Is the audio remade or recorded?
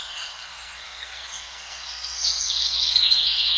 remade